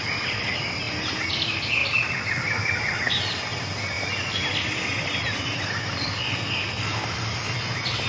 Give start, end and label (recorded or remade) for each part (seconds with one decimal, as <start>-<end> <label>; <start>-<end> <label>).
0.0-8.1 recorded